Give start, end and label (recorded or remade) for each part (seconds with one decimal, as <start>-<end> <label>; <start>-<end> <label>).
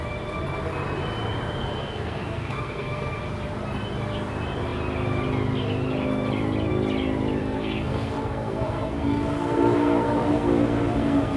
0.0-1.6 recorded; 1.6-3.2 remade; 3.2-7.4 recorded; 7.4-11.4 remade